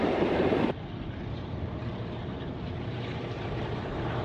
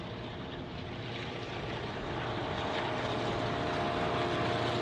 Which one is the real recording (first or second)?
second